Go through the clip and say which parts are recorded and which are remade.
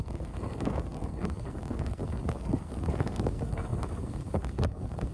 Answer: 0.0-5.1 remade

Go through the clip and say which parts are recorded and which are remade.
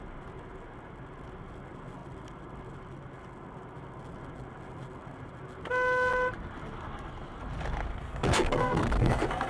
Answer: 0.0-7.9 recorded; 7.9-9.5 remade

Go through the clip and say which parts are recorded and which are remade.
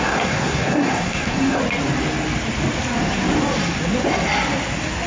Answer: 0.0-1.6 remade; 1.6-5.1 recorded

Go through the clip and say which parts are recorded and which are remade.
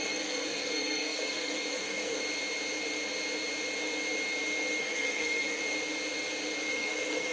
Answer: 0.0-2.2 remade; 2.2-4.8 recorded; 4.8-5.6 remade; 5.6-6.7 recorded; 6.7-7.3 remade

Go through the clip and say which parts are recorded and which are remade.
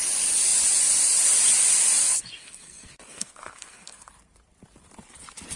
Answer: 0.0-2.0 recorded; 2.0-4.1 remade; 4.1-5.6 recorded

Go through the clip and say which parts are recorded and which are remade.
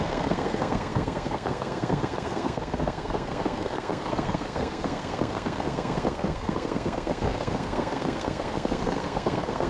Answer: 0.0-9.7 remade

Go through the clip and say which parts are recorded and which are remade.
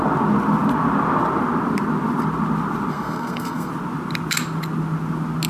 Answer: 0.0-2.9 recorded; 2.9-3.7 remade; 3.7-5.5 recorded